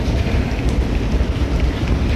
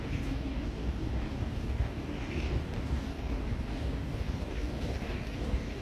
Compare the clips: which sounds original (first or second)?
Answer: first